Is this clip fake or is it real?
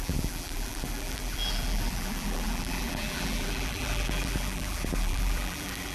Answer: fake